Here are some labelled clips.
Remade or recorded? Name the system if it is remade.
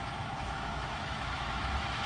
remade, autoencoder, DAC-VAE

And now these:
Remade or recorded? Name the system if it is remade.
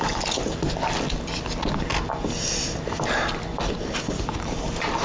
recorded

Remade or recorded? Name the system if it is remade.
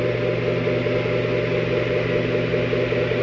recorded